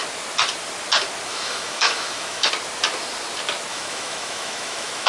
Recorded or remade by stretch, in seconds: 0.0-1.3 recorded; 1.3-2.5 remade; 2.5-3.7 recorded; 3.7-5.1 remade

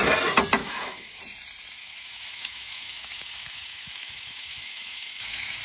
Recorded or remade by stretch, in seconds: 0.0-0.6 recorded; 0.6-1.2 remade; 1.2-1.8 recorded; 1.8-5.6 remade

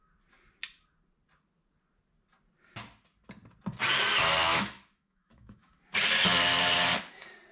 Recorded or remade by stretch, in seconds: 0.0-4.5 recorded; 4.5-5.8 remade; 5.8-7.5 recorded

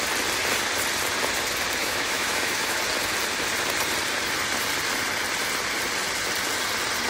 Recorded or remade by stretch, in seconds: 0.0-1.8 recorded; 1.8-2.8 remade; 2.8-7.1 recorded

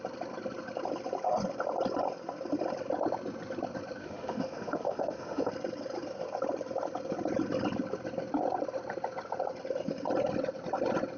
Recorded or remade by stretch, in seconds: 0.0-4.0 recorded; 4.0-5.5 remade; 5.5-11.2 recorded

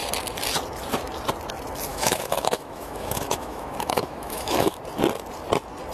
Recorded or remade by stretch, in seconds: 0.0-1.9 recorded; 1.9-4.8 remade; 4.8-5.9 recorded

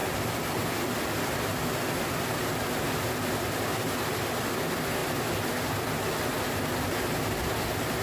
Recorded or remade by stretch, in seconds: 0.0-8.0 recorded

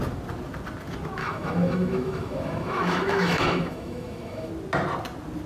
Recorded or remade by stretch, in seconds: 0.0-1.2 recorded; 1.2-4.5 remade; 4.5-5.5 recorded